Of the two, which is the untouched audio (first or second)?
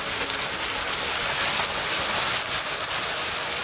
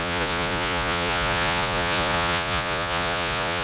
first